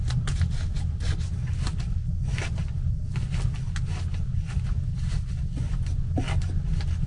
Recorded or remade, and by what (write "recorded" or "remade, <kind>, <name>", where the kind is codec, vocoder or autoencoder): recorded